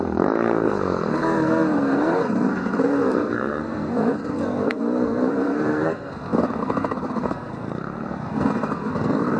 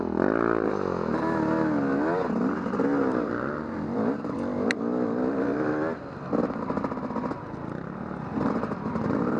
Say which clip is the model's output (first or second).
first